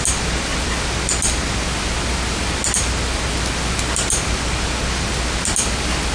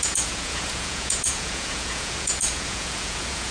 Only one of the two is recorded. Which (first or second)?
first